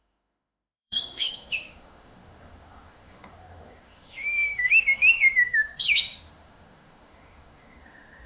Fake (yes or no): yes